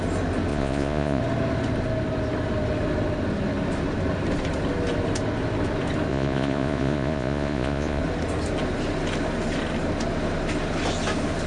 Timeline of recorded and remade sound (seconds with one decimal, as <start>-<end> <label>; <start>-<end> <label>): 0.0-0.5 recorded; 0.5-1.2 remade; 1.2-6.1 recorded; 6.1-8.0 remade; 8.0-11.5 recorded